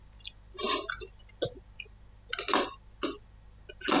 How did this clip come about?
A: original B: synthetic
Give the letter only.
A